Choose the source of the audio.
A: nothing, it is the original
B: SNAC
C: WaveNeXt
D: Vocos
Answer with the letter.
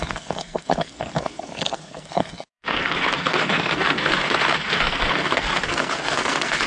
B